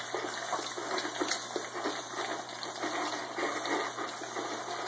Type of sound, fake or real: real